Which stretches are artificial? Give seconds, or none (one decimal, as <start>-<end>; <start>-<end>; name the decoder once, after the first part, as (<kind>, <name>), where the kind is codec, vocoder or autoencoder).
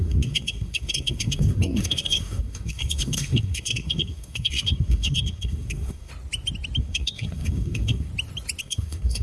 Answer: 0.0-6.1 (codec, SNAC); 6.8-8.1; 8.6-9.2